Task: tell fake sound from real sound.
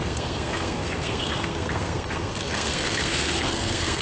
fake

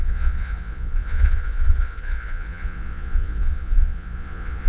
fake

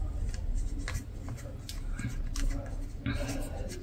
real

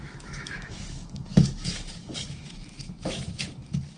fake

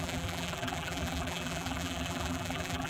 fake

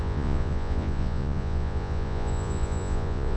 fake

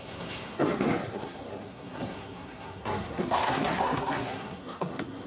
fake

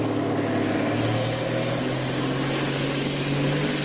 real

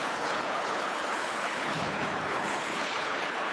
fake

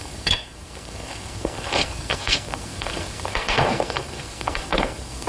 fake